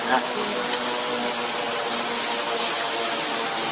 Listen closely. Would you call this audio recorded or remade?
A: recorded